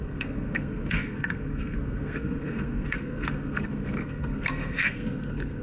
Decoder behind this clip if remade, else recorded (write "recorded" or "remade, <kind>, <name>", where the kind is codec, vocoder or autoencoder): remade, codec, SNAC